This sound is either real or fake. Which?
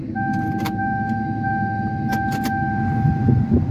real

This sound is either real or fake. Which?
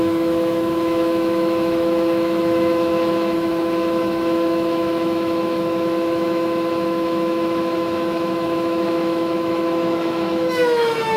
fake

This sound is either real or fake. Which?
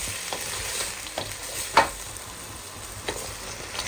real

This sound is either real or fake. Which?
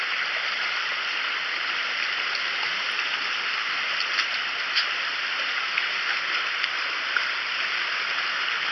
real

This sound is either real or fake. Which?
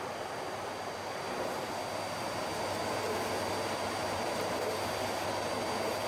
real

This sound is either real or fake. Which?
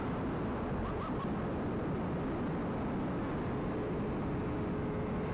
real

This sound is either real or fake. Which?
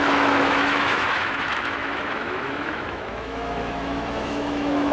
fake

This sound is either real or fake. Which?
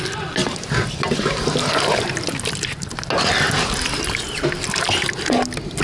real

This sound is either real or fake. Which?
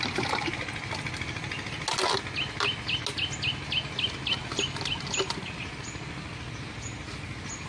real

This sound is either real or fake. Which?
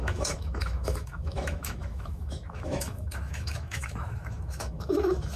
fake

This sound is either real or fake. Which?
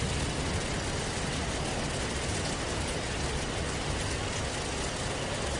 real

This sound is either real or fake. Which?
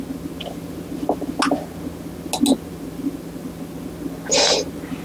real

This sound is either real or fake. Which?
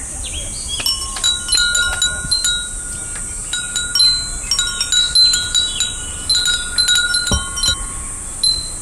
real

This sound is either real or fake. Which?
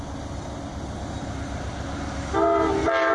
real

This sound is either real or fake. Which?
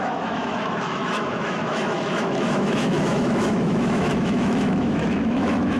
fake